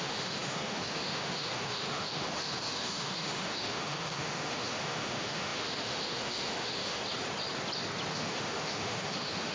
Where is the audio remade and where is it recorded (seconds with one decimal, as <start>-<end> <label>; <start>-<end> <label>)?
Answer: 0.0-7.0 remade; 7.0-8.1 recorded; 8.1-9.5 remade